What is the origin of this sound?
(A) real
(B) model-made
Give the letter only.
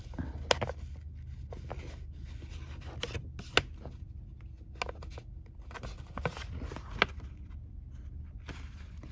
A